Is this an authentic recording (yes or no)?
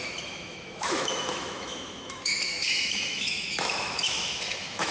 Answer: no